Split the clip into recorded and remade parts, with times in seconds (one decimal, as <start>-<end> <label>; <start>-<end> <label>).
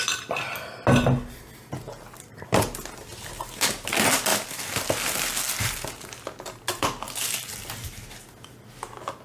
0.0-9.2 recorded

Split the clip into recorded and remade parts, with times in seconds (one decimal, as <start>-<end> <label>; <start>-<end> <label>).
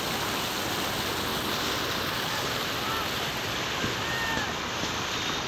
0.0-5.5 recorded